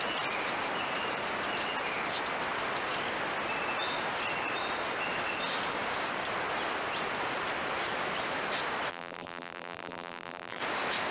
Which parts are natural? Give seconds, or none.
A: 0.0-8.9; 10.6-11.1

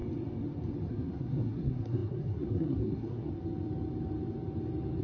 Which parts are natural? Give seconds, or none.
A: 0.0-0.9; 3.3-5.0

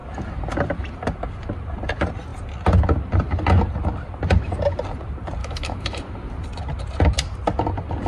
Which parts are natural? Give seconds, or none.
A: 0.0-5.4; 6.0-8.1

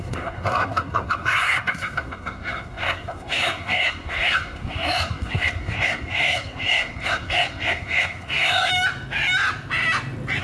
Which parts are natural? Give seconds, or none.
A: 8.7-10.4

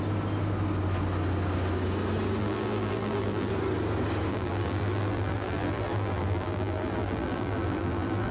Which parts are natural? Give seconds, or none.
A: 0.0-2.4; 3.5-4.3

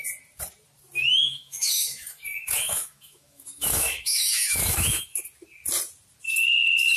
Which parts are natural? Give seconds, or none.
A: 0.0-1.2; 5.2-7.0

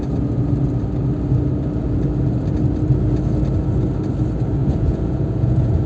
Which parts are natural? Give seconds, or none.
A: 0.0-4.6

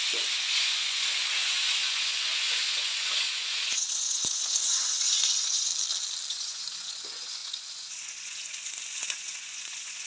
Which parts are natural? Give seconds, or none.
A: 5.7-6.3